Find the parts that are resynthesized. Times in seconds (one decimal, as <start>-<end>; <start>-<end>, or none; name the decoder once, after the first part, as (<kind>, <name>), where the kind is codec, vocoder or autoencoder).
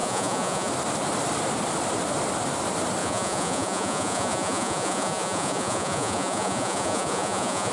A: 0.0-0.7 (vocoder, Vocos); 3.0-7.7